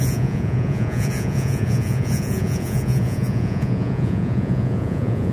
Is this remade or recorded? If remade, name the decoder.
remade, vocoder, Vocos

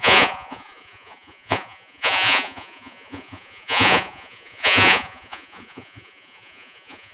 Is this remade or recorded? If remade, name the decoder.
remade, vocoder, Vocos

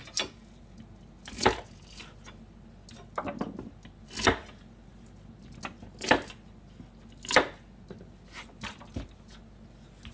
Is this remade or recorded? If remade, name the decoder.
recorded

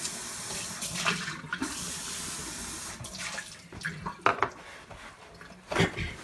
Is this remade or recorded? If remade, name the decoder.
recorded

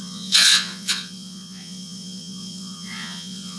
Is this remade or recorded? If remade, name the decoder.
remade, vocoder, Vocos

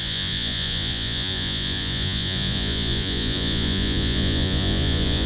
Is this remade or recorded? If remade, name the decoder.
remade, vocoder, Vocos